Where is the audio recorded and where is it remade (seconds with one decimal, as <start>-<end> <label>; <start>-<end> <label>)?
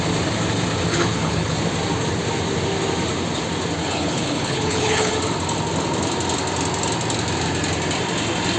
0.0-0.9 recorded; 0.9-1.6 remade; 1.6-3.8 recorded; 3.8-5.1 remade; 5.1-8.6 recorded